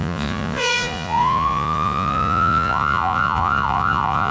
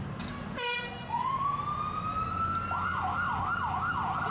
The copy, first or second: first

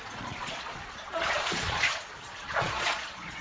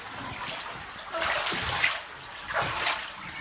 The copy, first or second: first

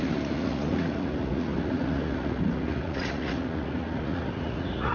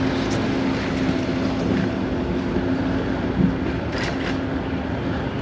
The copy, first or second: first